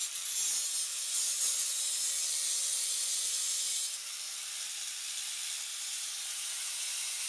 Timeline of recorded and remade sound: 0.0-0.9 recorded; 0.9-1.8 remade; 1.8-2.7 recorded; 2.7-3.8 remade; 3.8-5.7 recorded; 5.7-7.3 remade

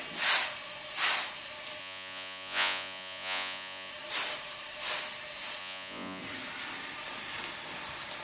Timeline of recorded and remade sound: 0.0-1.8 recorded; 1.8-3.9 remade; 3.9-5.6 recorded; 5.6-6.2 remade; 6.2-8.2 recorded

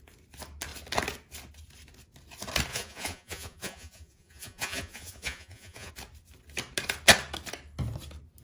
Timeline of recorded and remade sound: 0.0-2.7 recorded; 2.7-5.9 remade; 5.9-8.4 recorded

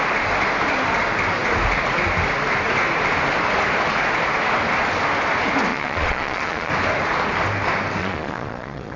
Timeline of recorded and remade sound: 0.0-5.7 recorded; 5.7-6.7 remade; 6.7-8.0 recorded; 8.0-9.0 remade

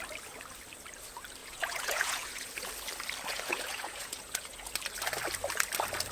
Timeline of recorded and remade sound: 0.0-1.4 recorded; 1.4-2.7 remade; 2.7-3.3 recorded; 3.3-4.7 remade; 4.7-6.1 recorded

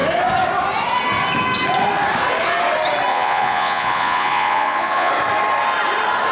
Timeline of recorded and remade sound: 0.0-3.1 recorded; 3.1-5.1 remade; 5.1-6.3 recorded

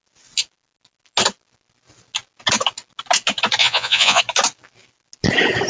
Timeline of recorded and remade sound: 0.0-3.6 recorded; 3.6-4.2 remade; 4.2-5.7 recorded

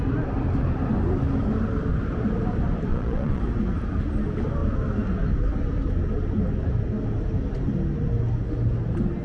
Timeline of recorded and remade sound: 0.0-2.9 recorded; 2.9-3.4 remade; 3.4-9.2 recorded